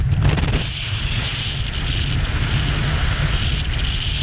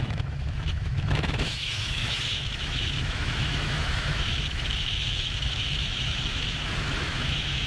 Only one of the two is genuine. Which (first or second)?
first